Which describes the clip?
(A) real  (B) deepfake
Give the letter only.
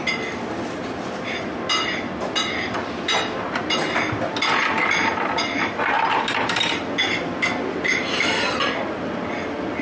A